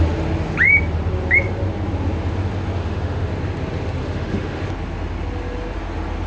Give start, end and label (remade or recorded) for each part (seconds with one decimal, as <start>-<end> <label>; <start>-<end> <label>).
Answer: 0.0-2.8 recorded; 2.8-3.3 remade; 3.3-4.0 recorded; 4.0-4.6 remade; 4.6-6.3 recorded